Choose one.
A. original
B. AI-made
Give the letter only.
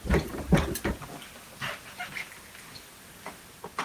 A